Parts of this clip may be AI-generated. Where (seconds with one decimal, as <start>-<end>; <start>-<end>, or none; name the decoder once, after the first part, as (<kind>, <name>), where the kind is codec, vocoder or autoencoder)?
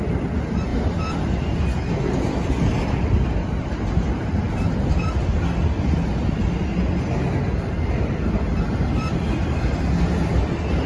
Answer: none